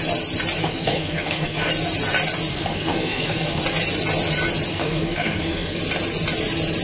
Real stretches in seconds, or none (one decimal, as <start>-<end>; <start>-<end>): 0.0-0.6; 1.7-2.5; 3.6-4.7; 5.8-6.8